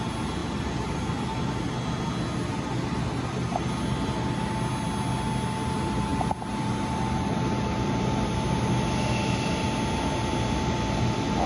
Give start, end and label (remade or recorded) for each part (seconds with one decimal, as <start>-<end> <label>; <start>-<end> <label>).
0.0-11.5 recorded